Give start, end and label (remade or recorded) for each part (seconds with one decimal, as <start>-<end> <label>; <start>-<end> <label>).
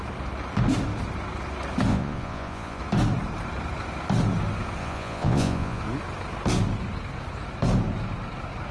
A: 0.0-1.9 recorded; 1.9-2.8 remade; 2.8-4.8 recorded; 4.8-5.8 remade; 5.8-8.7 recorded